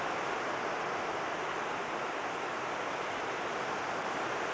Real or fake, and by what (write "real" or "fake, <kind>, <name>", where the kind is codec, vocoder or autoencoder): real